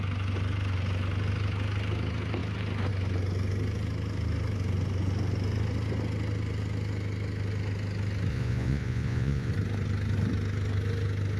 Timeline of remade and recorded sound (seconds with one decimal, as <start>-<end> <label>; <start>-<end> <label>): 0.0-8.3 recorded; 8.3-9.5 remade; 9.5-11.4 recorded